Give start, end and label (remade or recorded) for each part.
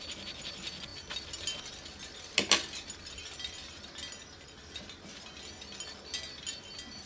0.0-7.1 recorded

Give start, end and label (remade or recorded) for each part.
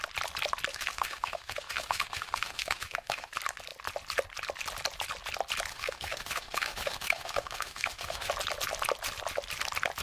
0.0-0.7 recorded; 0.7-3.3 remade; 3.3-5.7 recorded; 5.7-8.3 remade; 8.3-10.0 recorded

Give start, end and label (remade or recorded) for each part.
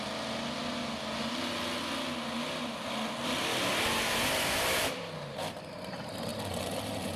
0.0-3.2 recorded; 3.2-4.8 remade; 4.8-7.2 recorded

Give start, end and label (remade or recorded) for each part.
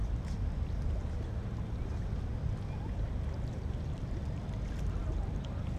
0.0-5.8 recorded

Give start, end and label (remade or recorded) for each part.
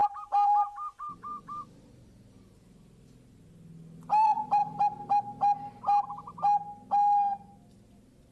0.0-0.6 remade; 0.6-8.3 recorded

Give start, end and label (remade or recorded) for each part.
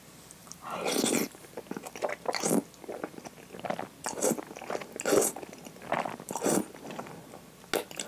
0.0-0.4 recorded; 0.4-1.5 remade; 1.5-8.1 recorded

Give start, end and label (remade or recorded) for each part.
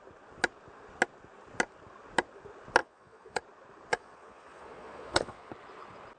0.0-2.8 recorded; 2.8-3.4 remade; 3.4-3.9 recorded; 3.9-5.5 remade; 5.5-6.2 recorded